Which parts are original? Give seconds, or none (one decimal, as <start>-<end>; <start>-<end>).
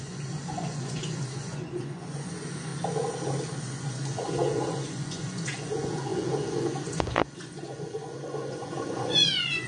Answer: 2.7-3.6